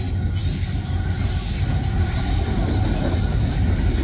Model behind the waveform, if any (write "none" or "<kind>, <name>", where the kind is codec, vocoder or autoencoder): none